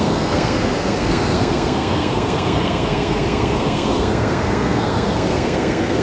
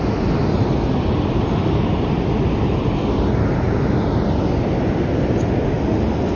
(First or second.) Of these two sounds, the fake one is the first